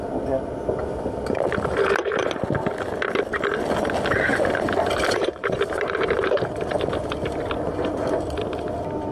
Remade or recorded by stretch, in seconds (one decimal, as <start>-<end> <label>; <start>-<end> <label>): 0.0-4.3 recorded; 4.3-7.5 remade; 7.5-9.1 recorded